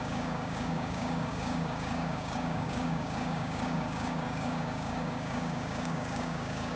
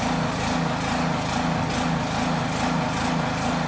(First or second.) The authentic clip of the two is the second